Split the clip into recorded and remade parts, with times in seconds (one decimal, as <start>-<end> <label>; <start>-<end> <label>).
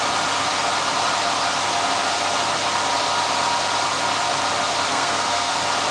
0.0-4.9 recorded; 4.9-5.5 remade; 5.5-5.9 recorded